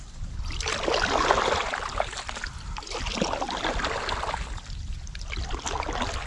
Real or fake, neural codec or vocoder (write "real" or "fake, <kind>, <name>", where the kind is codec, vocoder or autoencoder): real